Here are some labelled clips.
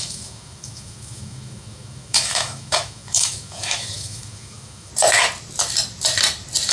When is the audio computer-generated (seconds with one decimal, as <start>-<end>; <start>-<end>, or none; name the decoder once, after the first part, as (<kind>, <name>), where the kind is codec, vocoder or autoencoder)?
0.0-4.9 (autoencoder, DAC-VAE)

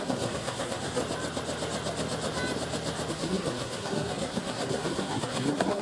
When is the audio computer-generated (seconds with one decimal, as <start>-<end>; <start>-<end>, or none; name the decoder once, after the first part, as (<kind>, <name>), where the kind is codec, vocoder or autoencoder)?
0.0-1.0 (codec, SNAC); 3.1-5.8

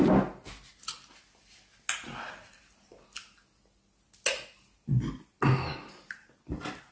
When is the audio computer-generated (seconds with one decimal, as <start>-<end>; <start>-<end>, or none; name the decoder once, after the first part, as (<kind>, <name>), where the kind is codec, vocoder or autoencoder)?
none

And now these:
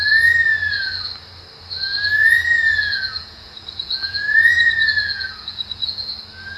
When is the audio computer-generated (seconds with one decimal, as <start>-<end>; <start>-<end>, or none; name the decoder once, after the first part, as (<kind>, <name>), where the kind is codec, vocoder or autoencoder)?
2.2-6.1 (vocoder, Vocos)

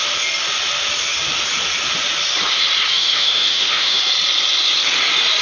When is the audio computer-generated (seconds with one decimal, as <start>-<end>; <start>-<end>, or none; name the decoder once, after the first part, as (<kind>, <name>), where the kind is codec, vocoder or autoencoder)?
2.9-4.0 (autoencoder, DAC-VAE)

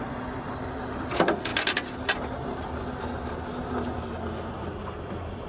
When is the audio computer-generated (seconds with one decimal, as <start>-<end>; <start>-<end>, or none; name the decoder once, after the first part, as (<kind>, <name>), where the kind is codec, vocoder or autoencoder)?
none

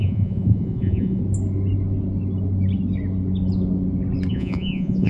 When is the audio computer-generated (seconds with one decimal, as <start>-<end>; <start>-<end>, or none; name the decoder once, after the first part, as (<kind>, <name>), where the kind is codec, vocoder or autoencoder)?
0.0-1.2 (vocoder, Vocos); 4.3-5.1